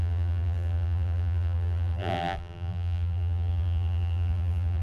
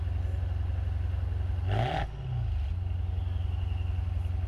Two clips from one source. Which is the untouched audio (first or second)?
second